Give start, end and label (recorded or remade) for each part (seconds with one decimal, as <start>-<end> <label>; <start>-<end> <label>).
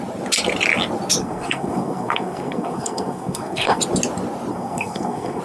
0.0-1.2 recorded; 1.2-3.8 remade; 3.8-4.5 recorded; 4.5-5.4 remade